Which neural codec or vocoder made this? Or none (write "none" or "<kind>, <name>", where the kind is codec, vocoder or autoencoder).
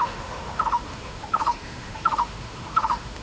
autoencoder, DAC-VAE